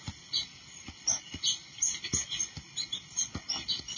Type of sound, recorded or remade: recorded